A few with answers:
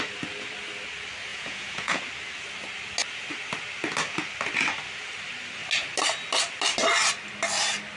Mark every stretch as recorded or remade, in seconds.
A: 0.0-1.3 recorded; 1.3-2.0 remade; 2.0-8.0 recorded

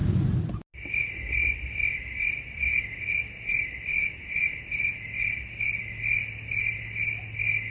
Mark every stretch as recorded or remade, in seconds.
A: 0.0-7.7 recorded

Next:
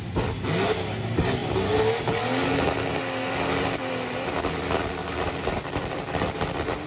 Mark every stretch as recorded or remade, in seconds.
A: 0.0-5.0 recorded; 5.0-5.6 remade; 5.6-6.9 recorded

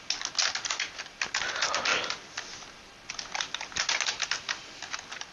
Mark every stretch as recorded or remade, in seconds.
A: 0.0-5.3 recorded

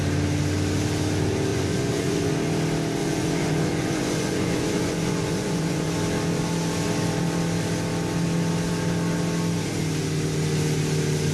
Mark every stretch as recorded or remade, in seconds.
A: 0.0-1.5 recorded; 1.5-2.3 remade; 2.3-3.0 recorded; 3.0-5.9 remade; 5.9-11.3 recorded

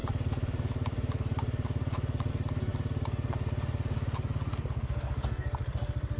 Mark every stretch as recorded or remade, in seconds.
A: 0.0-2.3 remade; 2.3-6.2 recorded